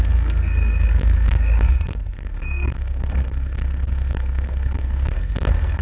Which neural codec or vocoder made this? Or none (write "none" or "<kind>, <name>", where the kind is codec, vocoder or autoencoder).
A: codec, SNAC